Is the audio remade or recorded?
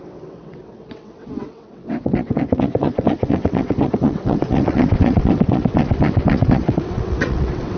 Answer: remade